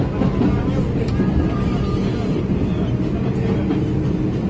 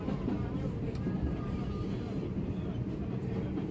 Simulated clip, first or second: second